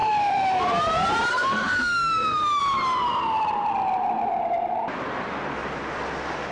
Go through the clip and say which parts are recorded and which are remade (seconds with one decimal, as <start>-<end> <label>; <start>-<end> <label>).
0.0-0.6 remade; 0.6-1.3 recorded; 1.3-2.6 remade; 2.6-6.5 recorded